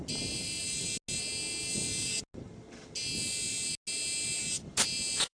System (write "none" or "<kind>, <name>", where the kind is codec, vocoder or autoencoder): none